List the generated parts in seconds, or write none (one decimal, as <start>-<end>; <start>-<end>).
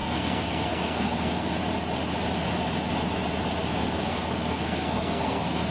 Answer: 0.0-1.6; 3.8-5.7